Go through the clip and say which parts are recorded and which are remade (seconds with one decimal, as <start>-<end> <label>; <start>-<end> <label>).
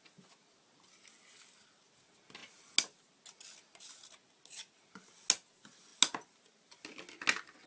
0.0-7.7 recorded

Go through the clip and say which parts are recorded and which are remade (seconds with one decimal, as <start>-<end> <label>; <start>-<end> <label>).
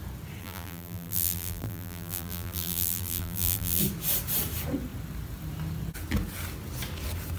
0.0-0.4 recorded; 0.4-3.8 remade; 3.8-7.4 recorded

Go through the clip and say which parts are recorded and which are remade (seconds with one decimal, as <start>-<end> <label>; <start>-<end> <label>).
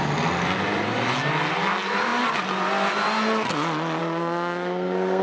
0.0-4.0 recorded; 4.0-5.2 remade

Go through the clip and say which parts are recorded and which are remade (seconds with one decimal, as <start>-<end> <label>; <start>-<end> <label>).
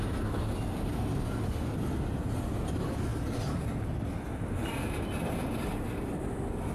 0.0-6.7 recorded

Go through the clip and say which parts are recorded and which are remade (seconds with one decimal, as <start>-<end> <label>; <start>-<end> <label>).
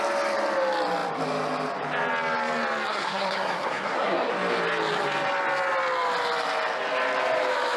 0.0-2.9 recorded; 2.9-4.3 remade; 4.3-7.8 recorded